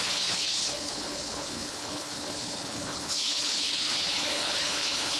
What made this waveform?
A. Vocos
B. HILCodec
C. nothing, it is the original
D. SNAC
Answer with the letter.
B